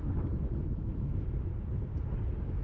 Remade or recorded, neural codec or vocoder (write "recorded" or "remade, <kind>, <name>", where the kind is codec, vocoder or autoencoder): remade, autoencoder, DAC-VAE